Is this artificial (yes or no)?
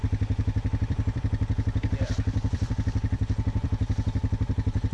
yes